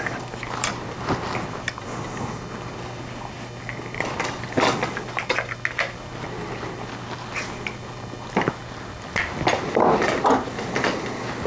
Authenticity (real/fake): real